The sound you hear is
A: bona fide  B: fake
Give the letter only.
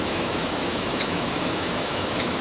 B